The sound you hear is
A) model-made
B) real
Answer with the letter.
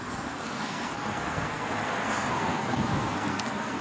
A